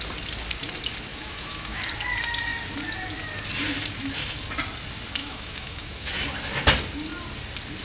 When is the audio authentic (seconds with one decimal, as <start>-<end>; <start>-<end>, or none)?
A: 0.0-1.1; 1.8-5.2; 6.1-7.8